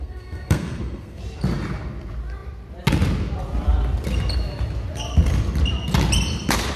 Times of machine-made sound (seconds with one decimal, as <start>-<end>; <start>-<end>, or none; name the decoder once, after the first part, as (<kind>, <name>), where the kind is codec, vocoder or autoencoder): 0.0-1.2 (codec, SNAC)